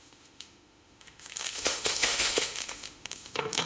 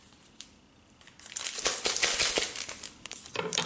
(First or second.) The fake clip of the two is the first